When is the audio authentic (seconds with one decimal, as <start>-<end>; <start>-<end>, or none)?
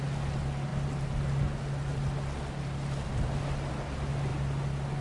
0.0-5.0